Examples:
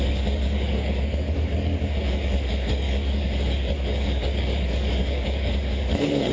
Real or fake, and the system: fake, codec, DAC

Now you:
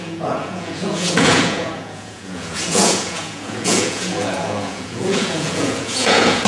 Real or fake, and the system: fake, vocoder, Vocos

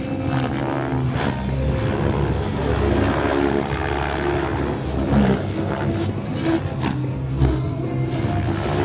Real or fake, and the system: real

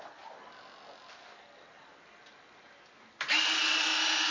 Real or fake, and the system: real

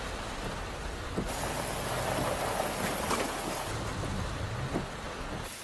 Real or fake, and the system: real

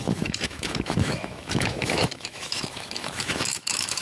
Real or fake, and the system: fake, autoencoder, DAC-VAE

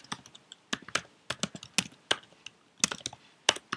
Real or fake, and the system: real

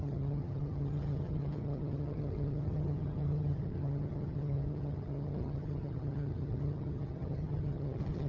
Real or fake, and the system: fake, vocoder, HiFi-GAN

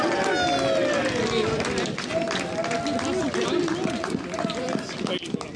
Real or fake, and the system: real